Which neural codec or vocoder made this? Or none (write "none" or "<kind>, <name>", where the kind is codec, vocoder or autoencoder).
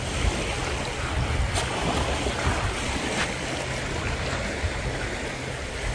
none